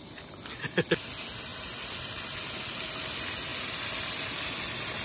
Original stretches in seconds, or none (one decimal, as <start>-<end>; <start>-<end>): 0.0-5.0